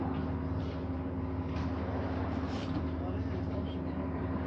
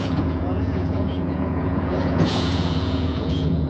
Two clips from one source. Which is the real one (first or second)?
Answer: first